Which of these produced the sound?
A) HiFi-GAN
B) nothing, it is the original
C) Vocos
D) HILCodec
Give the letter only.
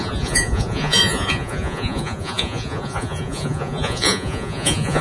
C